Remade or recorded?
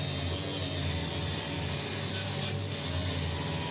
recorded